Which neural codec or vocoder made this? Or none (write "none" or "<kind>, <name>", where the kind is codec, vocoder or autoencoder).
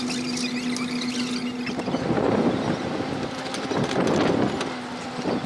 none